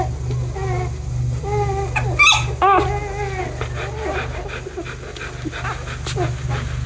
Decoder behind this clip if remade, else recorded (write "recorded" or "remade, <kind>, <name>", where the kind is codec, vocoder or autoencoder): recorded